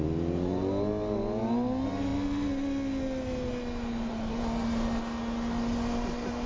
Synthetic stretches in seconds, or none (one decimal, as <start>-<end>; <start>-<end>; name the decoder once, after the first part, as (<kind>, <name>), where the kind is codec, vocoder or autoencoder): none